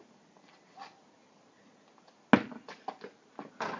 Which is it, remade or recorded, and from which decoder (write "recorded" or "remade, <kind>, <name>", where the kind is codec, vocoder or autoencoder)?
recorded